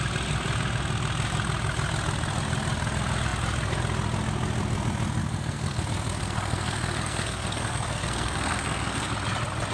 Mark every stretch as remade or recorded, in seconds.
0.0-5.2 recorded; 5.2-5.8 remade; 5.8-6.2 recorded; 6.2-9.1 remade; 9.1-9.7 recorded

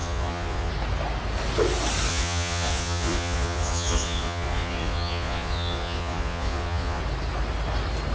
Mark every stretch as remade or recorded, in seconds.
0.0-0.7 remade; 0.7-2.1 recorded; 2.1-7.0 remade; 7.0-8.1 recorded

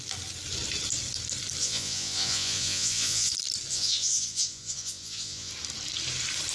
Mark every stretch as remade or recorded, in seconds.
0.0-1.6 recorded; 1.6-3.3 remade; 3.3-3.7 recorded; 3.7-5.5 remade; 5.5-6.5 recorded

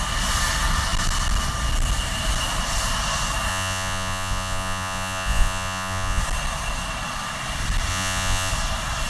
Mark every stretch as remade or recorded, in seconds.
0.0-3.5 recorded; 3.5-6.2 remade; 6.2-7.9 recorded; 7.9-8.5 remade; 8.5-9.1 recorded